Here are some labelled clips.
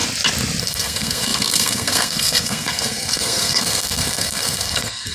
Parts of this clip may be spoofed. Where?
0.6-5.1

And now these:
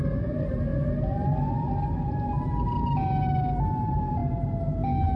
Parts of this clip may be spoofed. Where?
0.0-0.7; 3.8-4.2

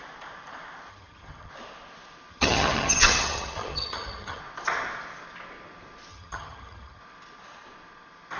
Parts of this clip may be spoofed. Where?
0.9-1.5; 2.3-4.4; 6.1-7.0

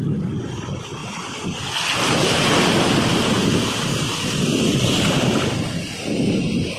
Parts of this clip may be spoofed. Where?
none

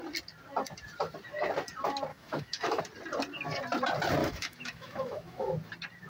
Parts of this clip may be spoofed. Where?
2.1-2.8; 4.2-5.5